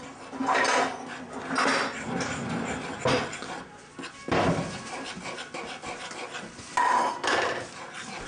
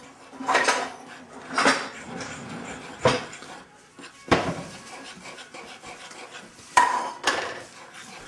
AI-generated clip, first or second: second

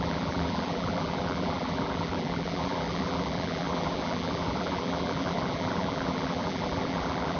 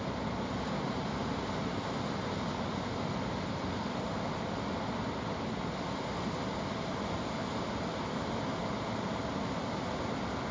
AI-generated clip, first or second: first